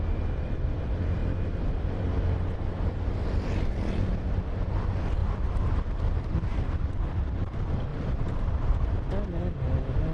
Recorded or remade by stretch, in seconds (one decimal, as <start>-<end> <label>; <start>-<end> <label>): 0.0-1.2 recorded; 1.2-2.0 remade; 2.0-5.2 recorded; 5.2-6.7 remade; 6.7-7.9 recorded; 7.9-8.5 remade; 8.5-10.1 recorded